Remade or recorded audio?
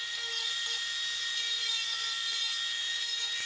remade